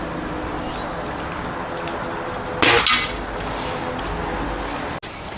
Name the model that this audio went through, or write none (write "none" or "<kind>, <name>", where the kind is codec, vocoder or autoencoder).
none